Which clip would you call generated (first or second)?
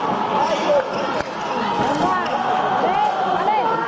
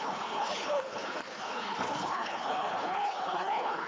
second